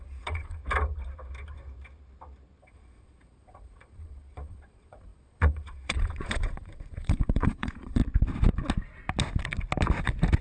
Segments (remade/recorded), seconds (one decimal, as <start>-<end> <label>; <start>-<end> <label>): 0.0-0.6 remade; 0.6-2.6 recorded; 2.6-8.0 remade; 8.0-10.4 recorded